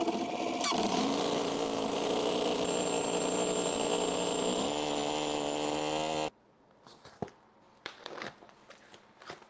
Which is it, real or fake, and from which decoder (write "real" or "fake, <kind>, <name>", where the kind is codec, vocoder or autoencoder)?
real